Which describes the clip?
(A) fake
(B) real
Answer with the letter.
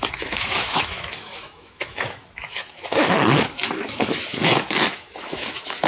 A